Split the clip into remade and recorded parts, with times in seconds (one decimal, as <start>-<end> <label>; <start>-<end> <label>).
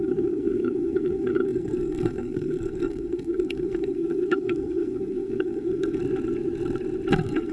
0.0-6.0 remade; 6.0-7.1 recorded; 7.1-7.5 remade